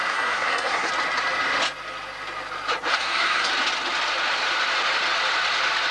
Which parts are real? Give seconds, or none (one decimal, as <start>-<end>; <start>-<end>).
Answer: 0.9-2.9; 3.5-5.9